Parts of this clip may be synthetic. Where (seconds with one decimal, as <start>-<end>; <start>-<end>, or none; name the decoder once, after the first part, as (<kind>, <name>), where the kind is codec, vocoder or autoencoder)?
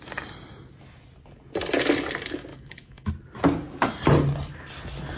2.5-3.1 (autoencoder, DAC-VAE)